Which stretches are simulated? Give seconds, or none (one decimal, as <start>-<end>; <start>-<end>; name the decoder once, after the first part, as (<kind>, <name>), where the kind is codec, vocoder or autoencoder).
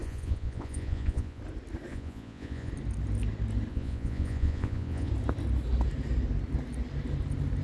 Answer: 0.0-1.4 (vocoder, Vocos); 1.9-2.7; 3.7-5.1